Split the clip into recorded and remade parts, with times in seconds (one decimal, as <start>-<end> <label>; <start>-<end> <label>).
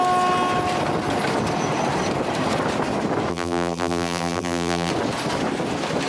0.0-3.3 recorded; 3.3-4.9 remade; 4.9-6.1 recorded